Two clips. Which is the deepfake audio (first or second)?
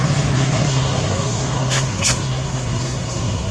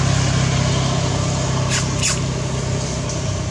first